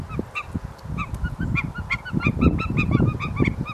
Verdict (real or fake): real